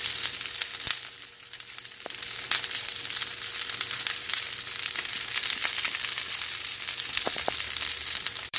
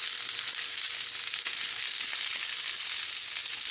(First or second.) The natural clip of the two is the second